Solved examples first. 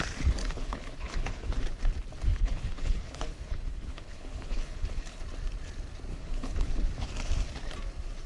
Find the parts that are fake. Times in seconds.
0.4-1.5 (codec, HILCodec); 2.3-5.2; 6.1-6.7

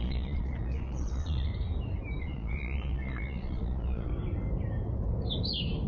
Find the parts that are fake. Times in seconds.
0.0-1.5 (vocoder, Vocos); 2.2-4.1